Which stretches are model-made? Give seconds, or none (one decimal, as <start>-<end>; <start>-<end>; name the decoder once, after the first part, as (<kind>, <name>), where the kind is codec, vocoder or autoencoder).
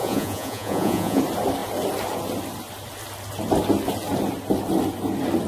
0.0-1.2 (vocoder, Vocos)